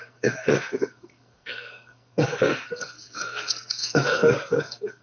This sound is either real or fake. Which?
fake